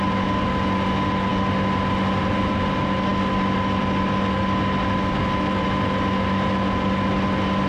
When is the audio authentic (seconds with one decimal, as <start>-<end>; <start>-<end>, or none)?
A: 0.0-7.7